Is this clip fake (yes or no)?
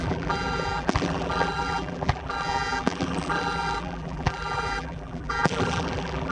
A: yes